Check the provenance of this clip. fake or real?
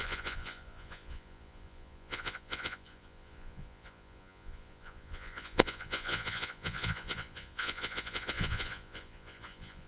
fake